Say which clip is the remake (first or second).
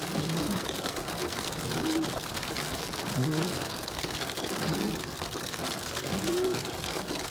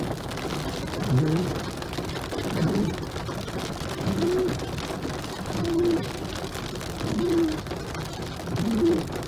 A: first